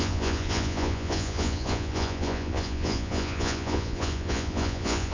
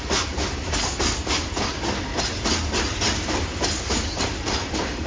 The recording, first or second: second